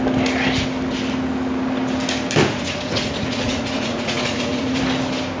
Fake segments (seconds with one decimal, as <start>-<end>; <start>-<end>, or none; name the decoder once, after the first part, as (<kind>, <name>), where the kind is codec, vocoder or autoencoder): 2.4-4.8 (vocoder, Vocos)